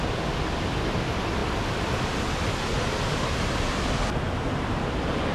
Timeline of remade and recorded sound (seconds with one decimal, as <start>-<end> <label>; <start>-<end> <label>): 0.0-5.3 recorded